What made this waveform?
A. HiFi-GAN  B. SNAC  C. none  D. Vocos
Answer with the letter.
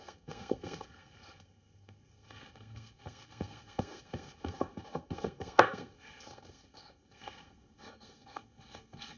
B